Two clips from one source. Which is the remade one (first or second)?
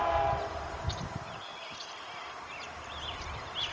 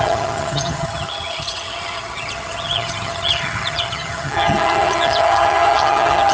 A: second